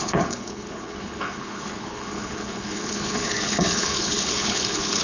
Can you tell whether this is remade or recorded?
remade